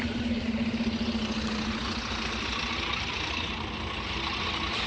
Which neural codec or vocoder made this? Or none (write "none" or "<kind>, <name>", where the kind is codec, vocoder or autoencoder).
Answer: none